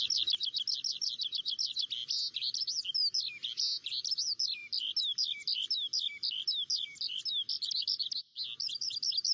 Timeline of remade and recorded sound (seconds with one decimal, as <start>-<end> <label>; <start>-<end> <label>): 0.0-9.3 recorded